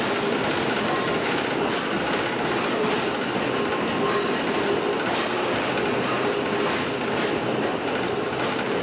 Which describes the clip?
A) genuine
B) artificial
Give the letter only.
A